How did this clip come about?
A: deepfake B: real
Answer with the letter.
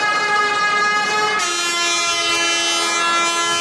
B